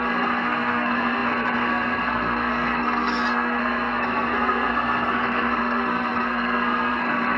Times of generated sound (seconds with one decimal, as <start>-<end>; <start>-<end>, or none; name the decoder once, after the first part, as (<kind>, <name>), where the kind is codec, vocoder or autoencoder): 0.0-7.4 (codec, SNAC)